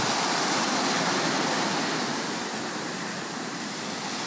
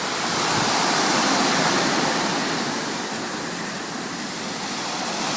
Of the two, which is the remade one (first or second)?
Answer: second